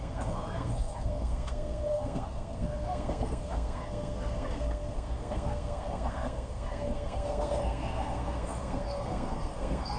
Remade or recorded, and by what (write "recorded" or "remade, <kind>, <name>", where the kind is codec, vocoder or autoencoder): remade, codec, SNAC